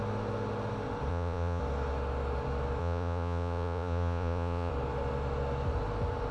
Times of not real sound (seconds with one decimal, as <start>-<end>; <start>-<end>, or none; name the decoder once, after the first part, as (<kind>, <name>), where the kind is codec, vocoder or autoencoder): 1.1-1.6 (vocoder, Vocos); 2.8-4.7